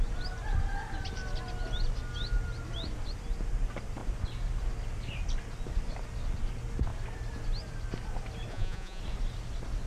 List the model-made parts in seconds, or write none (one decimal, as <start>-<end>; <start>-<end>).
8.5-9.0